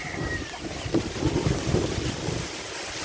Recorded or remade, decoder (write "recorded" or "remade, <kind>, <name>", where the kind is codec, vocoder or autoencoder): recorded